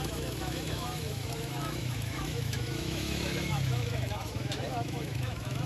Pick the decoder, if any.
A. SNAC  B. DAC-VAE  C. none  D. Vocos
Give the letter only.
B